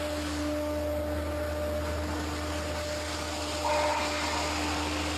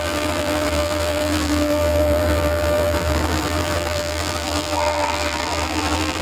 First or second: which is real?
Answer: first